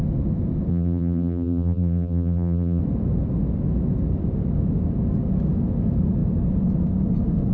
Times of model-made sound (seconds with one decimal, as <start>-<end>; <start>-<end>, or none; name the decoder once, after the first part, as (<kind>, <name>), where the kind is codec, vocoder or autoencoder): 0.7-2.8 (vocoder, BigVGAN v2)